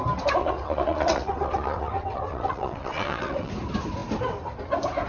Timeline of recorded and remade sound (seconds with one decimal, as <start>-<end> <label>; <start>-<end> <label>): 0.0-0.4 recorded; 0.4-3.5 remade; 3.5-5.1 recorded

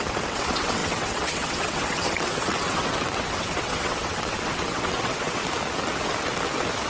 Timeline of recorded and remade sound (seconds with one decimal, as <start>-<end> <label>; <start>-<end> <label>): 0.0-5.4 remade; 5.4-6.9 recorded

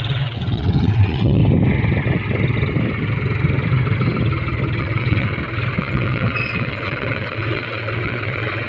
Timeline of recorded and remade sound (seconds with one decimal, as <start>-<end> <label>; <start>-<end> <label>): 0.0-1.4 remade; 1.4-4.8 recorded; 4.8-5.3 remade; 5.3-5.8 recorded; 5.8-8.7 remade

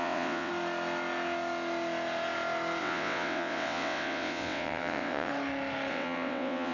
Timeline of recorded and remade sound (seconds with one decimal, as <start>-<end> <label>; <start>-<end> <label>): 0.0-0.5 remade; 0.5-2.8 recorded; 2.8-5.3 remade; 5.3-5.9 recorded; 5.9-6.7 remade

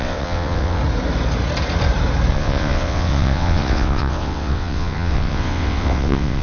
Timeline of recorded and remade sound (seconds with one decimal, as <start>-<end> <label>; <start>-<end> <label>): 0.0-0.8 remade; 0.8-2.3 recorded; 2.3-6.4 remade

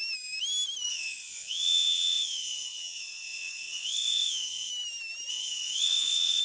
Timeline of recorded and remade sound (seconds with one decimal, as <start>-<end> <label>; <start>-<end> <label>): 0.0-0.9 recorded; 0.9-4.7 remade; 4.7-5.3 recorded; 5.3-6.4 remade

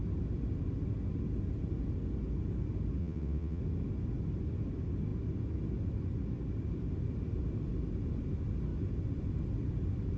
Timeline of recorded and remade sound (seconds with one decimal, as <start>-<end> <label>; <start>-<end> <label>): 0.0-3.0 recorded; 3.0-3.6 remade; 3.6-10.2 recorded

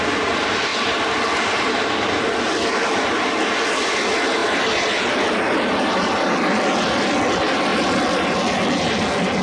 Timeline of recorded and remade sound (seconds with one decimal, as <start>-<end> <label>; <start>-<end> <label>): 0.0-9.4 recorded